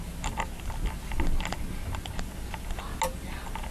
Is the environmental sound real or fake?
real